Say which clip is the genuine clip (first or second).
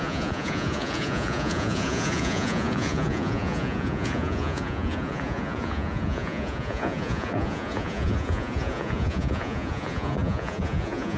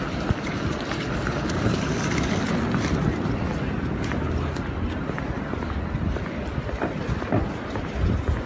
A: second